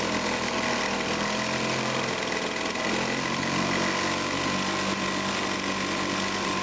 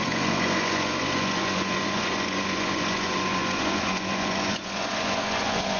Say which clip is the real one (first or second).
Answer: first